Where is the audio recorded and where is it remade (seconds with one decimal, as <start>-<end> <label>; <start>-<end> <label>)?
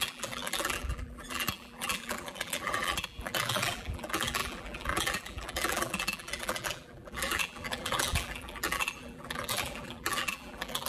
0.0-10.9 remade